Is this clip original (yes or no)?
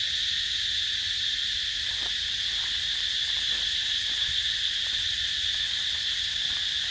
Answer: yes